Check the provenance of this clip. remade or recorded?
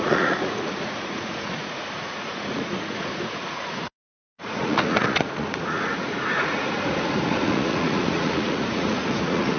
remade